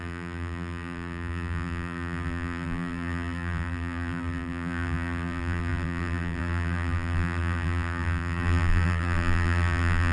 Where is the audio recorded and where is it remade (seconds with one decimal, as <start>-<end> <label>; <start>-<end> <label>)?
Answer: 0.0-10.1 remade